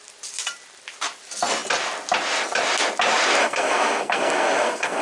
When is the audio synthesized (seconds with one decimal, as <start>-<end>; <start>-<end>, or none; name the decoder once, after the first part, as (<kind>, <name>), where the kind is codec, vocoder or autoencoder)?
3.4-5.0 (codec, SNAC)